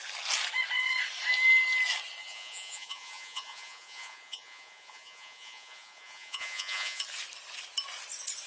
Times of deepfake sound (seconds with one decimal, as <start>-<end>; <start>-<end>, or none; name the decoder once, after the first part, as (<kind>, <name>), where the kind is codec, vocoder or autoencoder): 2.2-7.0 (vocoder, Vocos)